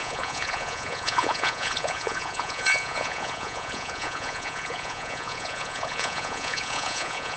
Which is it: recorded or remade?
remade